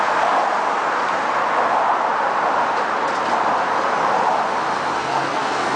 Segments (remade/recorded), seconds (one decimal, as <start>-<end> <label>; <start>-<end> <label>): 0.0-5.0 recorded; 5.0-5.8 remade